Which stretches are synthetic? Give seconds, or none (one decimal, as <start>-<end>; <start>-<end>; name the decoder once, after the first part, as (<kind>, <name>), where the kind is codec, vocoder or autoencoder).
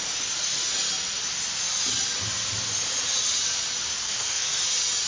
4.0-4.6 (codec, SNAC)